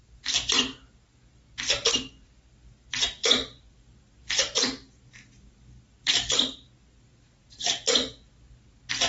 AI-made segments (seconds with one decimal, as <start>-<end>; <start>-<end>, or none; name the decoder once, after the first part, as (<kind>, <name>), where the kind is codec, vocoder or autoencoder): none